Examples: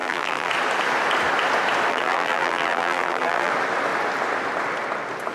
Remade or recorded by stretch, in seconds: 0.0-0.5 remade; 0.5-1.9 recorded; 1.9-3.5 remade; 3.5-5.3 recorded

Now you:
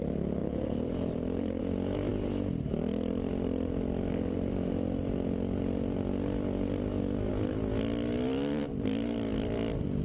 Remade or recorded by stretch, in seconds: 0.0-0.4 recorded; 0.4-1.6 remade; 1.6-10.0 recorded

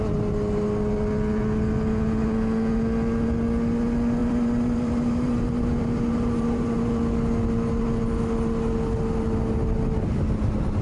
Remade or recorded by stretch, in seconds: 0.0-4.2 recorded; 4.2-6.9 remade; 6.9-10.8 recorded

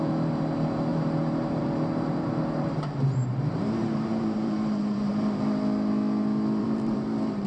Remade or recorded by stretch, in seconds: 0.0-5.1 remade; 5.1-6.6 recorded; 6.6-7.5 remade